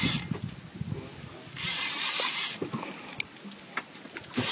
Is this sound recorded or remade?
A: recorded